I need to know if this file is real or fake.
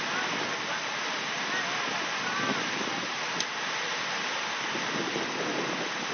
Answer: real